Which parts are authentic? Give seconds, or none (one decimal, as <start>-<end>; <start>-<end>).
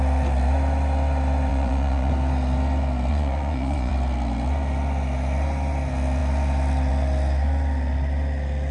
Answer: 0.0-1.5; 2.1-3.1; 3.9-8.7